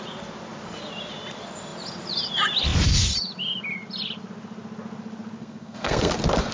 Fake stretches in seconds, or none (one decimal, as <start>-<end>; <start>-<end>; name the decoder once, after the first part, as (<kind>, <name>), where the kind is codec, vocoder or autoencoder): 5.4-6.1 (codec, SNAC)